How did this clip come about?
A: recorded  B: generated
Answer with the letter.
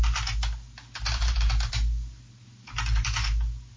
A